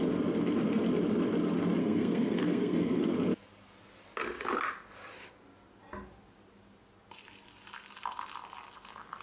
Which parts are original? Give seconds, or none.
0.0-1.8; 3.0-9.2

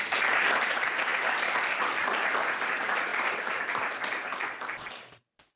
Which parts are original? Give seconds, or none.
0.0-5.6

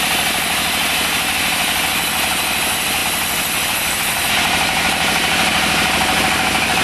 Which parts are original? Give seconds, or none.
0.0-6.8

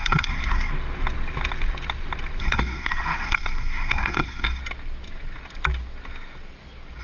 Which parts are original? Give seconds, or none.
0.7-2.4; 4.6-7.0

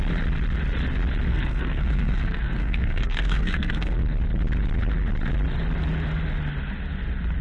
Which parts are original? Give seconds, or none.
0.0-1.3; 4.0-7.4

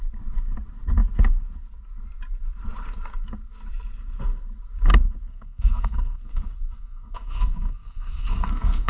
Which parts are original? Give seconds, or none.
0.0-5.3

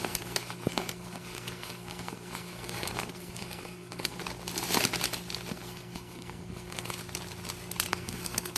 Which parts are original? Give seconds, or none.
4.2-5.5; 7.0-7.9

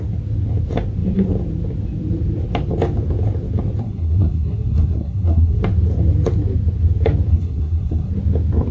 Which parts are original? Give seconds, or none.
0.0-3.8; 5.6-7.3; 8.1-8.7